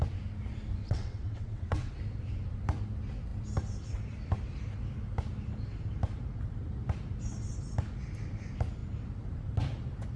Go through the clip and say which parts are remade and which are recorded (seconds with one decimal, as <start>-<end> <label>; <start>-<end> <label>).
0.0-0.8 recorded; 0.8-1.9 remade; 1.9-10.2 recorded